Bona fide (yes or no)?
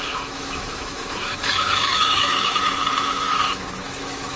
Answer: no